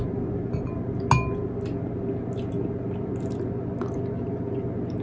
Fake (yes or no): no